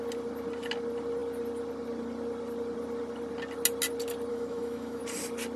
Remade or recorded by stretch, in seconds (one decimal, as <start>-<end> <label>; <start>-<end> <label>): 0.0-4.3 recorded; 4.3-5.0 remade; 5.0-5.6 recorded